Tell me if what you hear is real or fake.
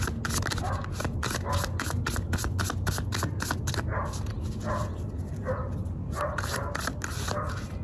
real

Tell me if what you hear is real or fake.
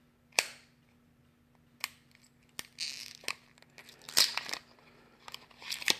real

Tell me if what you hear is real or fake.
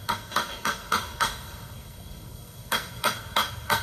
fake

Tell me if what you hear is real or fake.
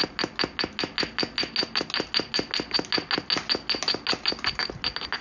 real